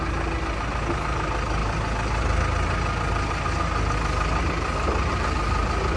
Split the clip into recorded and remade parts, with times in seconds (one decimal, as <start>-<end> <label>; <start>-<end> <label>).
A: 0.0-6.0 recorded